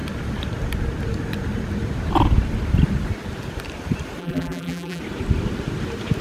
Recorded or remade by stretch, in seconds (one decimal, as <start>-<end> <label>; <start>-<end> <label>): 0.0-4.2 recorded; 4.2-5.0 remade; 5.0-6.2 recorded